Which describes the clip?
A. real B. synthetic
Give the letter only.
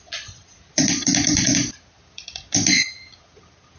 B